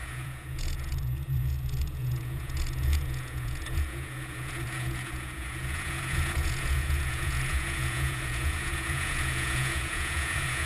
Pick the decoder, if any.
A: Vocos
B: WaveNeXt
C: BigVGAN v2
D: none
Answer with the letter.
A